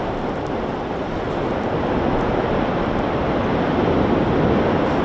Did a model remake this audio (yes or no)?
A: no